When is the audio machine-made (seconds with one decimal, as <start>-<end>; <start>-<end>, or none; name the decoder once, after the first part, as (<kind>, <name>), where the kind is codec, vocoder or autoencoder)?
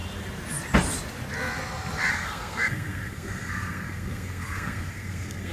2.1-5.5 (codec, SNAC)